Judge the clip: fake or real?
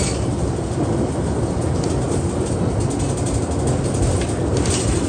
real